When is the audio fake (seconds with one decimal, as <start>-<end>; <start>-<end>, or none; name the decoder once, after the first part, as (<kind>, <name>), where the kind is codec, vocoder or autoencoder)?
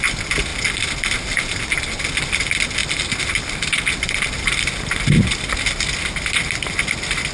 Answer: none